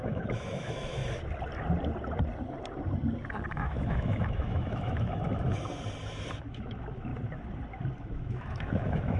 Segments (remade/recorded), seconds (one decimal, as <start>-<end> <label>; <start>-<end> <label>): 0.0-1.0 remade; 1.0-3.5 recorded; 3.5-5.5 remade; 5.5-6.4 recorded; 6.4-7.1 remade; 7.1-8.0 recorded; 8.0-9.2 remade